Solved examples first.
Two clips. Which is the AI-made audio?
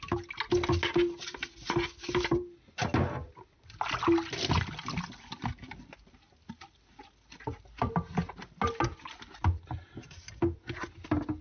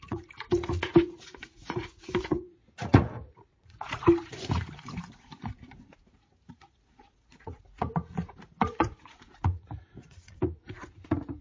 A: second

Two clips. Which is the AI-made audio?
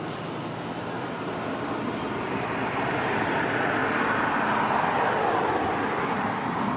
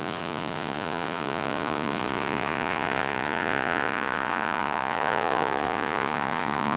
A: second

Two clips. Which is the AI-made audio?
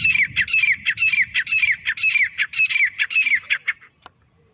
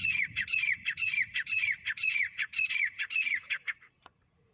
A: second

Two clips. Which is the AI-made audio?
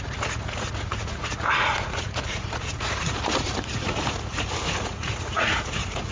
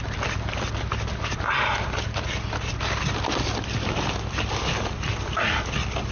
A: first